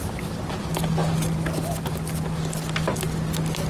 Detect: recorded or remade recorded